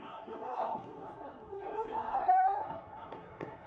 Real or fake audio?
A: fake